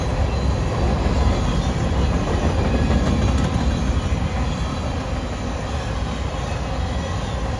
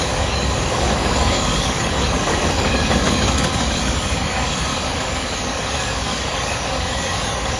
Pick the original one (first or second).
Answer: first